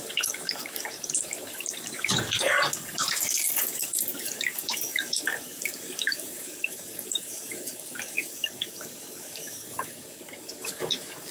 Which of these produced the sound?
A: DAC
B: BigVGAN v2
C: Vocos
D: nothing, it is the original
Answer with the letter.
A